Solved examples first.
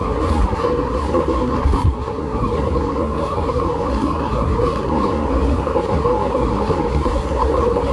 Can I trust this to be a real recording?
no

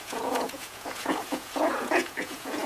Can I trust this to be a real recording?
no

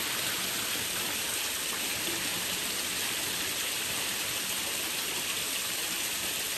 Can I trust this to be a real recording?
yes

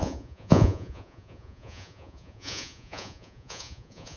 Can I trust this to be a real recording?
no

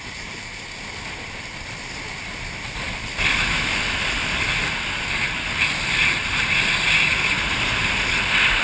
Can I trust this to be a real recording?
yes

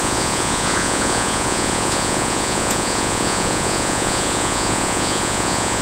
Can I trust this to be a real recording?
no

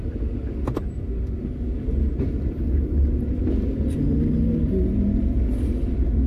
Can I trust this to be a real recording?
yes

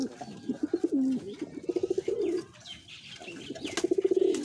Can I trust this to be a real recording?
yes